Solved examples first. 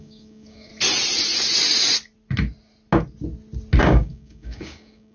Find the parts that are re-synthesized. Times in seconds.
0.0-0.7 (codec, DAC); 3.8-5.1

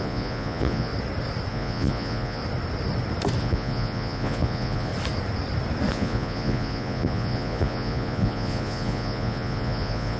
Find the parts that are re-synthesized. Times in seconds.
0.0-0.9 (vocoder, Vocos); 1.5-2.4; 3.4-4.9; 5.9-10.2

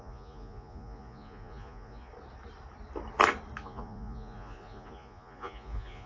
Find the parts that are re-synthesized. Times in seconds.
0.0-2.1 (vocoder, Vocos); 3.6-6.1